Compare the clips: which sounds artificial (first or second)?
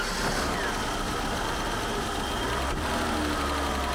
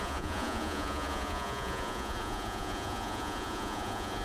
second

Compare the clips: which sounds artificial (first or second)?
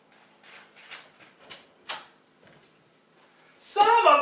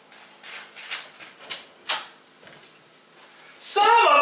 first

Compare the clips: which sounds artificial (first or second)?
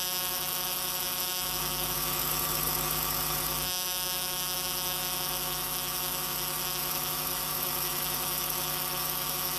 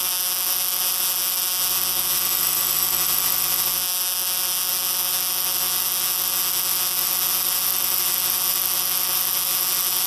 first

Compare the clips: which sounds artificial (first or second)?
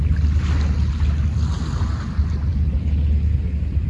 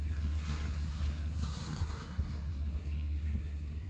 second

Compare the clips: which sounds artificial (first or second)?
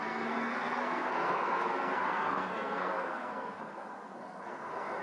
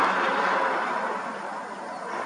first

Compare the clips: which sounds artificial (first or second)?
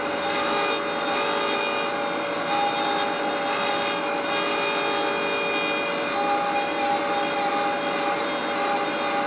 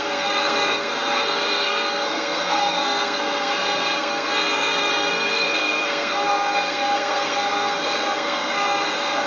second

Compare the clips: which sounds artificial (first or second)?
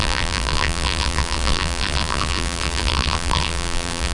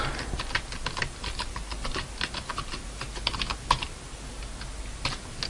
first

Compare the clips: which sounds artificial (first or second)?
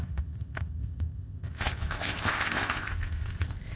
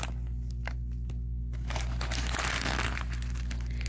first